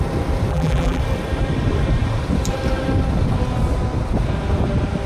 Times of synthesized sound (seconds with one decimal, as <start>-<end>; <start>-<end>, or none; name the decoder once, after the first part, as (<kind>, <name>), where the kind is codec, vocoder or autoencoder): 0.5-1.0 (vocoder, BigVGAN v2)